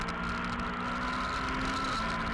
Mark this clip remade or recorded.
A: recorded